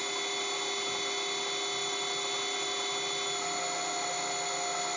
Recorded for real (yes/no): yes